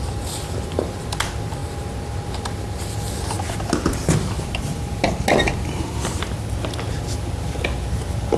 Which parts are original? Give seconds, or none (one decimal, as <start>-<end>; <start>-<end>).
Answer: 0.0-8.4